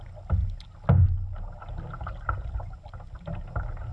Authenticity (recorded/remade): recorded